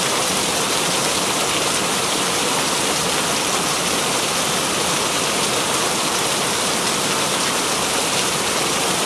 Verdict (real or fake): fake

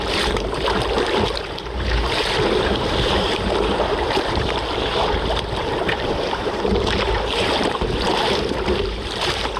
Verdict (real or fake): fake